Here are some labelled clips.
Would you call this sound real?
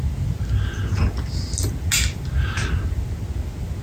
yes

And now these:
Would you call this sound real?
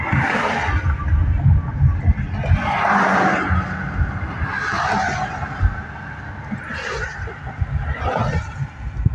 yes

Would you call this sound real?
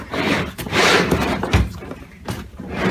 no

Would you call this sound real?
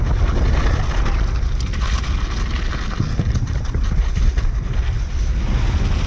yes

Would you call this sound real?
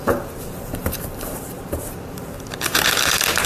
no